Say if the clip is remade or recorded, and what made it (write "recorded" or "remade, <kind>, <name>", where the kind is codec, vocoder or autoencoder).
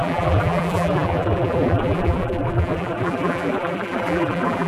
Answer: remade, vocoder, BigVGAN v2